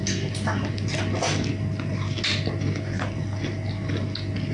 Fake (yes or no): no